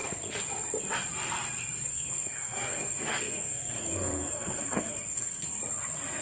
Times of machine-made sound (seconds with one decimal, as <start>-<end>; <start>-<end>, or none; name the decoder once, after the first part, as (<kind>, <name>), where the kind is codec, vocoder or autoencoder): 1.9-5.6 (codec, SNAC)